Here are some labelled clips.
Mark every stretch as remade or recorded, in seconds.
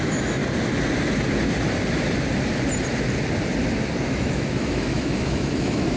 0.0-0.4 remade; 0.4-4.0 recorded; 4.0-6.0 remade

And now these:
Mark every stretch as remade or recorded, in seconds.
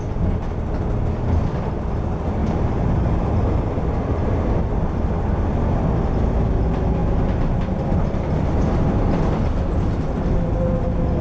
0.0-2.4 recorded; 2.4-3.8 remade; 3.8-11.2 recorded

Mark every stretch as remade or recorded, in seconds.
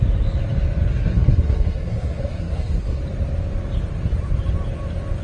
0.0-0.9 recorded; 0.9-3.0 remade; 3.0-5.2 recorded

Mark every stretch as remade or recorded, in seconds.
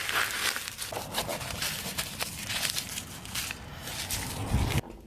0.0-1.3 recorded; 1.3-1.8 remade; 1.8-5.1 recorded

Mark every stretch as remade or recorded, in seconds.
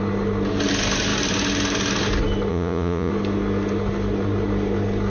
0.0-2.5 recorded; 2.5-3.1 remade; 3.1-5.1 recorded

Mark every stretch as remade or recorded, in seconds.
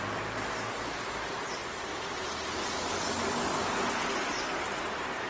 0.0-1.6 recorded; 1.6-3.7 remade; 3.7-5.3 recorded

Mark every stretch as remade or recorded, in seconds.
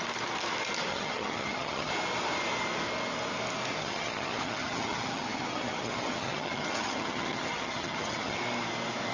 0.0-0.9 recorded; 0.9-1.9 remade; 1.9-3.8 recorded; 3.8-8.4 remade; 8.4-9.1 recorded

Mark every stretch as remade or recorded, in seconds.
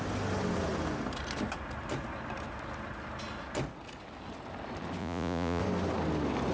0.0-5.0 recorded; 5.0-5.6 remade; 5.6-6.5 recorded